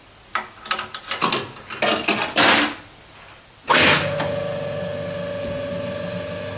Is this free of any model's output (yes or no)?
yes